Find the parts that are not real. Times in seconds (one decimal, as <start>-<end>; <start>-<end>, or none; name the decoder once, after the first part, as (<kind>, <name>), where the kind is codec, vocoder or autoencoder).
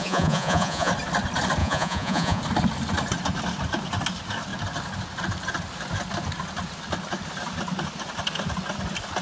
0.0-0.9 (vocoder, Vocos); 1.6-2.4